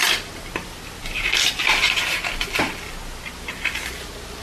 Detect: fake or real real